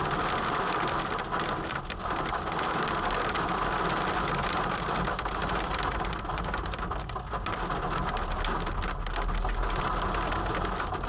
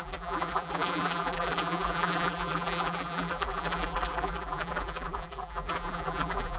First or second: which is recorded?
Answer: first